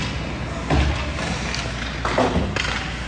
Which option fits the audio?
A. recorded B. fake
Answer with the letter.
A